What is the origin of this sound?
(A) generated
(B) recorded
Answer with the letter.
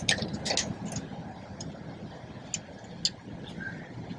B